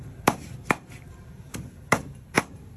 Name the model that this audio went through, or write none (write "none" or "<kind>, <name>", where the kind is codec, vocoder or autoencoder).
vocoder, BigVGAN v2